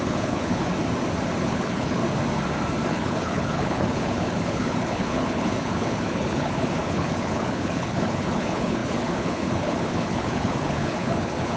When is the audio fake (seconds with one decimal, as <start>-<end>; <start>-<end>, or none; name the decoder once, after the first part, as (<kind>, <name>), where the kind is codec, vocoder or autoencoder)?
0.0-0.7 (codec, HILCodec); 1.4-2.0; 2.9-11.6